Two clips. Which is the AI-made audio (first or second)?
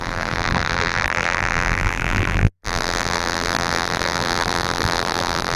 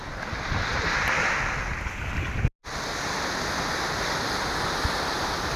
first